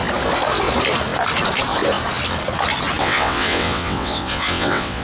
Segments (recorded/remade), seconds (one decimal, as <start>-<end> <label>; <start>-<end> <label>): 0.0-3.0 recorded; 3.0-5.0 remade